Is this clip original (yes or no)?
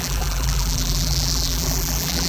no